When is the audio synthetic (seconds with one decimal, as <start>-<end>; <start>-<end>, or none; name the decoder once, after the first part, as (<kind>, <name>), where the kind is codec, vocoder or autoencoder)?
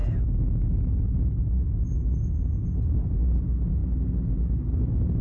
none